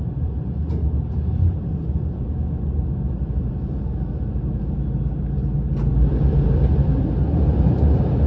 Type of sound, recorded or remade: recorded